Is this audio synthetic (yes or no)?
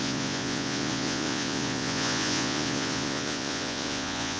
yes